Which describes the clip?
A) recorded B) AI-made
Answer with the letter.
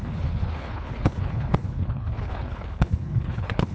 B